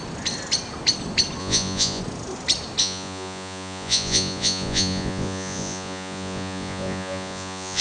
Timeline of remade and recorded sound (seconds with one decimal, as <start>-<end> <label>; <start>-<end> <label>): 0.0-1.4 recorded; 1.4-2.0 remade; 2.0-2.8 recorded; 2.8-7.8 remade